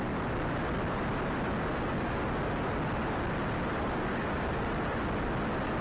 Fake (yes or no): no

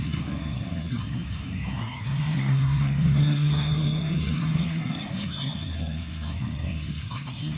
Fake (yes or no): yes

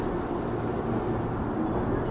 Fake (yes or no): no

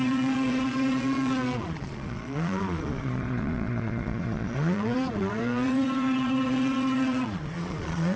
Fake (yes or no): yes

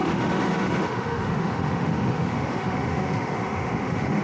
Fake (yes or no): yes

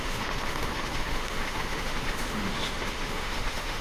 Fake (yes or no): yes